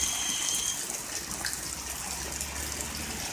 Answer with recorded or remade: recorded